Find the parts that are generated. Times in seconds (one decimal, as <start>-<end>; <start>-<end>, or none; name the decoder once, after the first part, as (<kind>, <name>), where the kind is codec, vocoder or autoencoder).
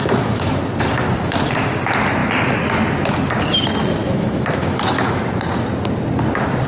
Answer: 0.0-0.5 (autoencoder, DAC-VAE); 4.0-5.2